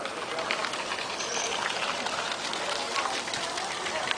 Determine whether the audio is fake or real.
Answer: real